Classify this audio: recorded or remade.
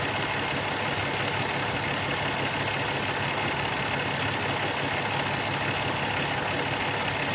recorded